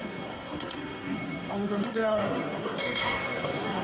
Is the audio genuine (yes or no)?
no